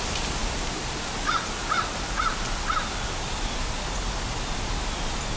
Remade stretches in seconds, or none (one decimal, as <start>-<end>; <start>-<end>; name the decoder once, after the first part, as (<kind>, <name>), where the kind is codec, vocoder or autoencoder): none